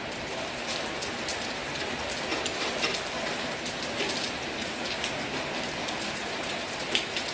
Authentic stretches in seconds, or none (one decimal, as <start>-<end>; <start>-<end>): 0.0-7.3